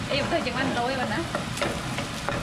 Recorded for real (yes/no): yes